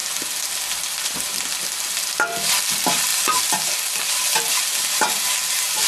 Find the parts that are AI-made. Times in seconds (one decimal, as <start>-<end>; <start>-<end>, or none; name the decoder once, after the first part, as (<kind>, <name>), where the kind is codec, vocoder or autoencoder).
none